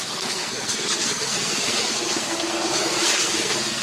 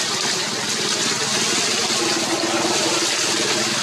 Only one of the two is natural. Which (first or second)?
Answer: second